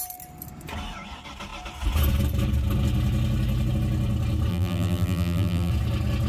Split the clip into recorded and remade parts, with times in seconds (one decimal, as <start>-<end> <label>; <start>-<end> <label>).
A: 0.0-4.5 recorded; 4.5-5.7 remade; 5.7-6.3 recorded

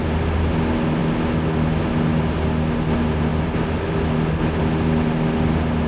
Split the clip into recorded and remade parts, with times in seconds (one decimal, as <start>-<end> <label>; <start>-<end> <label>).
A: 0.0-5.9 recorded